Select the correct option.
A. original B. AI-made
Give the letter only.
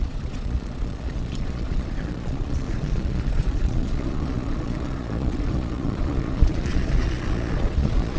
B